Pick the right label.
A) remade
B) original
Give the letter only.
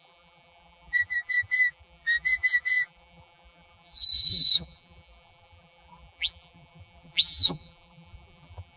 A